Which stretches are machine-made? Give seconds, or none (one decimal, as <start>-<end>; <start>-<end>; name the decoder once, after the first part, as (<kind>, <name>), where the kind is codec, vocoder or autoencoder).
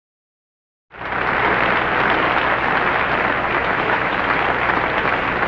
3.6-4.2 (autoencoder, DAC-VAE)